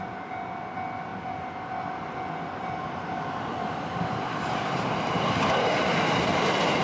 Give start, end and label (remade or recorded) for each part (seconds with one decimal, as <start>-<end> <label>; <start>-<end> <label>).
0.0-6.8 recorded